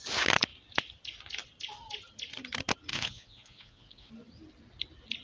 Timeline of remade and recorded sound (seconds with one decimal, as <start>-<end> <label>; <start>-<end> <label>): 0.0-2.9 recorded; 2.9-4.1 remade; 4.1-5.2 recorded